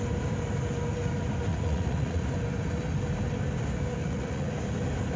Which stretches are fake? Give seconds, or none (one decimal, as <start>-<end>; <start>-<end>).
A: 1.5-2.2; 4.0-4.5